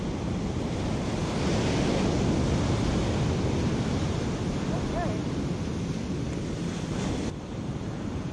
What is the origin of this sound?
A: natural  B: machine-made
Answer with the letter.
A